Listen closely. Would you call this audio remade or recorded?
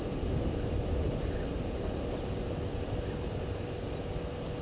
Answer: recorded